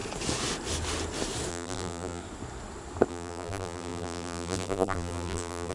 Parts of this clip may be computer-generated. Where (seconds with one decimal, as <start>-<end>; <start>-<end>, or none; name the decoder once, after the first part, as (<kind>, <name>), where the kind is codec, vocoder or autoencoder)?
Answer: 1.5-2.2 (vocoder, BigVGAN v2); 3.1-5.7